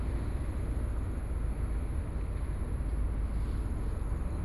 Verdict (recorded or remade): recorded